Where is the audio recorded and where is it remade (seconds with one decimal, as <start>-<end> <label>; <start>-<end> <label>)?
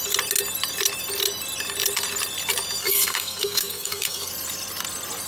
0.0-2.8 recorded; 2.8-4.3 remade; 4.3-5.3 recorded